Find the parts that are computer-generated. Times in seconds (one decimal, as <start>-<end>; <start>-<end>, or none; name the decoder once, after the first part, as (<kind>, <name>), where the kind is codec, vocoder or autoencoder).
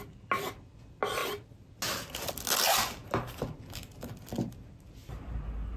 none